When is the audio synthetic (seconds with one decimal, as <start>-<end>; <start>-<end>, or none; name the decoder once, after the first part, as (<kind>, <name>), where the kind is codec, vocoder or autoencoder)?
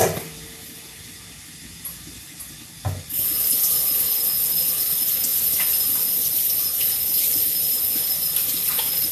none